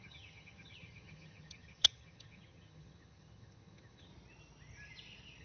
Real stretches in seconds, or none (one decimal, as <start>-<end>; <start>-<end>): 4.1-5.4